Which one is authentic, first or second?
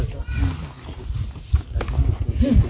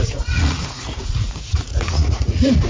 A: first